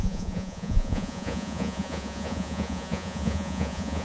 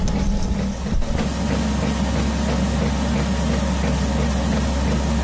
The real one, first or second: second